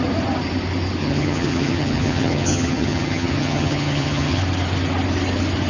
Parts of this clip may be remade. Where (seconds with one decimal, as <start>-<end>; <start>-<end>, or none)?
1.0-4.4